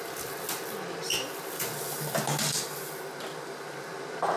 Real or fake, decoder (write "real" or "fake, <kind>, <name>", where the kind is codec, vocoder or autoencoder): real